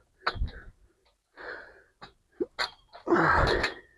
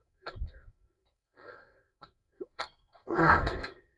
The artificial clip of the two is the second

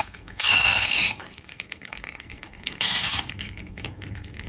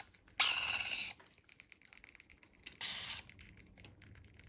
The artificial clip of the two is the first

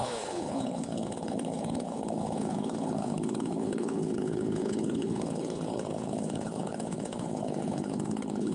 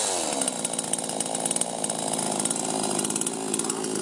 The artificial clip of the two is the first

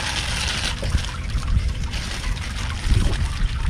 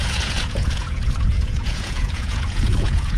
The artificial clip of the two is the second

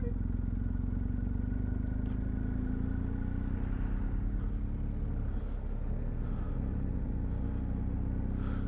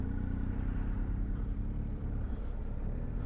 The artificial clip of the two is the second